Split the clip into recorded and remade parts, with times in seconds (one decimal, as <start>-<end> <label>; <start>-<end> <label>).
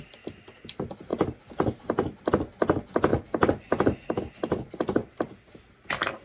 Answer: 0.0-6.2 recorded